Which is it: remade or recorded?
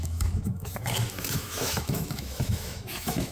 remade